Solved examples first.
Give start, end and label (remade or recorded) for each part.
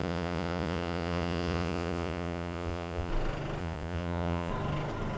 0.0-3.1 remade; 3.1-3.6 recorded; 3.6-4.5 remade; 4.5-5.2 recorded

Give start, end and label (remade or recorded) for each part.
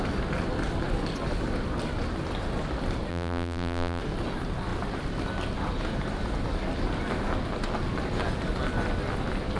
0.0-3.1 recorded; 3.1-4.0 remade; 4.0-9.6 recorded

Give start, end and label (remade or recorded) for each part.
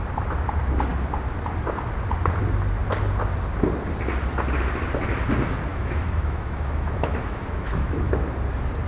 0.0-5.7 recorded; 5.7-8.1 remade; 8.1-8.9 recorded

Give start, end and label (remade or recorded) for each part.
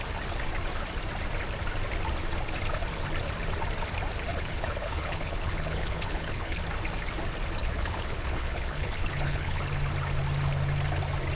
0.0-4.3 recorded; 4.3-6.6 remade; 6.6-7.6 recorded; 7.6-9.6 remade; 9.6-11.4 recorded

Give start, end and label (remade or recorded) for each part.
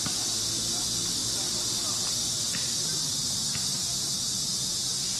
0.0-5.2 recorded